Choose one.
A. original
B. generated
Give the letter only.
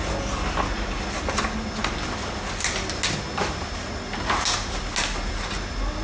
A